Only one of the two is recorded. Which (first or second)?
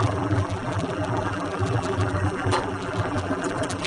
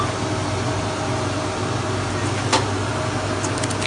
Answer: second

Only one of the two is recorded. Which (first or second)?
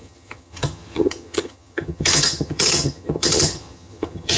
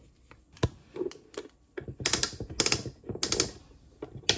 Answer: second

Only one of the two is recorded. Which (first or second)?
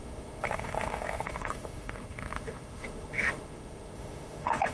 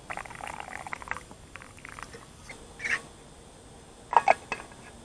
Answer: second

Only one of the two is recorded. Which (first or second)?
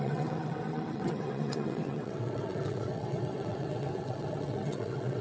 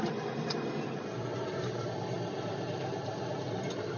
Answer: second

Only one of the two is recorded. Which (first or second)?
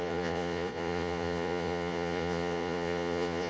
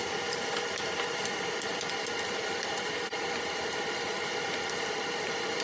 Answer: second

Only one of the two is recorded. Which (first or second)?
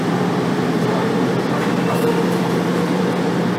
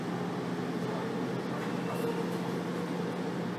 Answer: second